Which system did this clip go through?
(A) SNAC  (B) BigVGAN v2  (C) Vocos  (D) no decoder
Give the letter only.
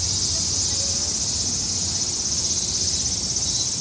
D